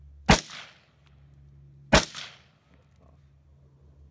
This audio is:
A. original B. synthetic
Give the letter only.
A